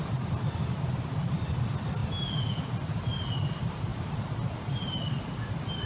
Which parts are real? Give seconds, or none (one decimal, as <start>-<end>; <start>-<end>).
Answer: 0.0-5.9